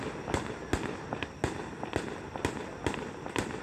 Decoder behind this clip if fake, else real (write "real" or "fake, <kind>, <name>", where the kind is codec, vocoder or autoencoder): real